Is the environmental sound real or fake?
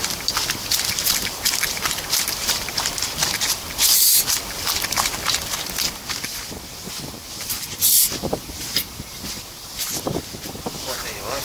real